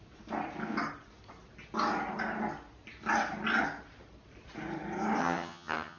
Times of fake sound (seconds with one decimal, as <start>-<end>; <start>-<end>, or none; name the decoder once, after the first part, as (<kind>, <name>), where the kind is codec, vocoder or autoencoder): 5.2-6.0 (vocoder, HiFi-GAN)